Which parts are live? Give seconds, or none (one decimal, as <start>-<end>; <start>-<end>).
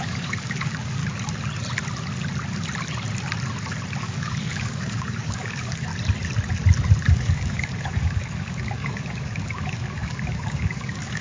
1.0-4.0; 5.9-7.1